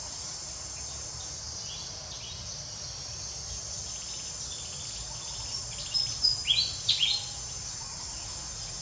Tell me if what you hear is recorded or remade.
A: recorded